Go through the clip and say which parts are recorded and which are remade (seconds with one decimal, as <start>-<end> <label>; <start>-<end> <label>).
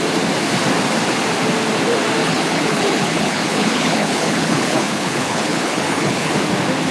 0.0-2.2 recorded; 2.2-6.3 remade; 6.3-6.9 recorded